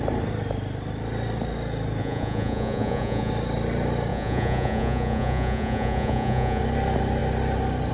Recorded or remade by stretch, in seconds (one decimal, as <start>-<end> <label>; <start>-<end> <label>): 0.0-2.0 recorded; 2.0-3.3 remade; 3.3-4.1 recorded; 4.1-6.6 remade; 6.6-7.9 recorded